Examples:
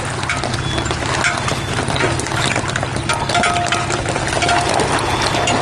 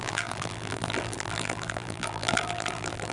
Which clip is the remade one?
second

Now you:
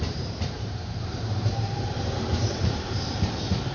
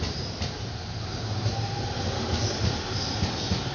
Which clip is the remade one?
first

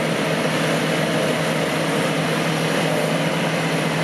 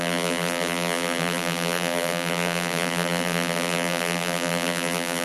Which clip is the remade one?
second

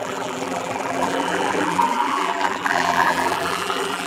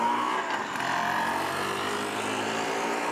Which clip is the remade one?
first